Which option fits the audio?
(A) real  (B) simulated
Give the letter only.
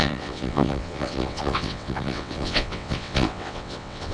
B